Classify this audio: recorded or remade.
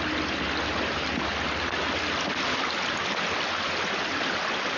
recorded